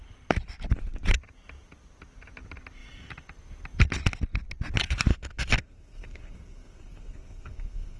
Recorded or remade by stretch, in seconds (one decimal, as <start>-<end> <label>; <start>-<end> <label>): 0.0-5.1 recorded; 5.1-8.0 remade